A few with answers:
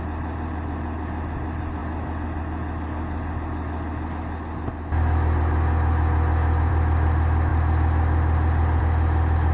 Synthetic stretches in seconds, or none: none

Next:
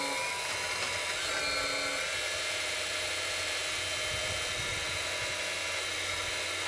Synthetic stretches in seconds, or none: none

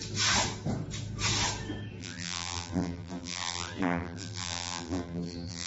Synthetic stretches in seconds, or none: 2.0-5.7 (vocoder, BigVGAN v2)

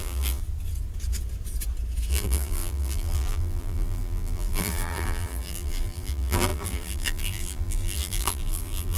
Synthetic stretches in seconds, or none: 0.0-0.4 (vocoder, BigVGAN v2); 2.1-9.0

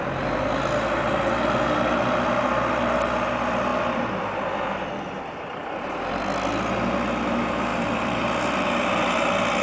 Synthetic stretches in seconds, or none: 3.7-4.8 (vocoder, BigVGAN v2); 7.7-9.1

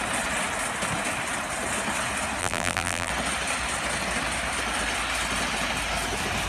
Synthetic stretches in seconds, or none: 2.4-3.1 (vocoder, BigVGAN v2)